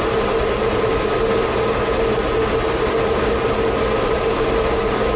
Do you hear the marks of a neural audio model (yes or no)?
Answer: no